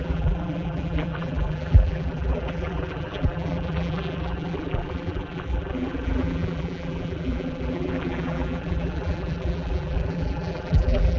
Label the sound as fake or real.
fake